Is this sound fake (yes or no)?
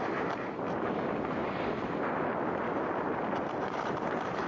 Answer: no